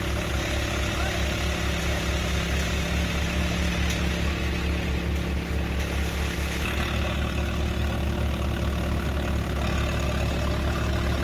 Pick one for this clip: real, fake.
real